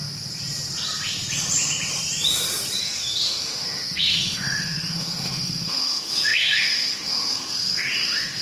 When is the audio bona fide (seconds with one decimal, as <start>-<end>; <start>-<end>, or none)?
0.0-2.8